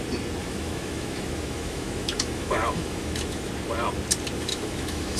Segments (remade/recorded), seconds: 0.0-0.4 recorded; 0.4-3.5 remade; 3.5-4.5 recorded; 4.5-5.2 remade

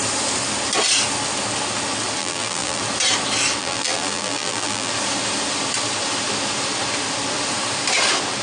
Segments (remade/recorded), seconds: 0.0-2.2 recorded; 2.2-2.8 remade; 2.8-3.6 recorded; 3.6-4.9 remade; 4.9-8.4 recorded

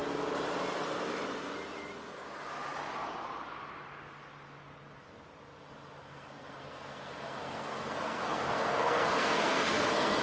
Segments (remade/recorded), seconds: 0.0-6.0 recorded; 6.0-10.2 remade

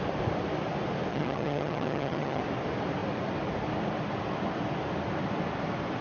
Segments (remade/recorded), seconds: 0.0-1.1 recorded; 1.1-2.4 remade; 2.4-6.0 recorded